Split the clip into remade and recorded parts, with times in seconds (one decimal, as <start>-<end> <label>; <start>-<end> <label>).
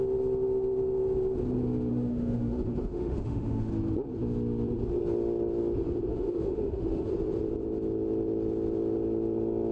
0.0-1.9 recorded; 1.9-3.7 remade; 3.7-6.1 recorded; 6.1-7.1 remade; 7.1-9.7 recorded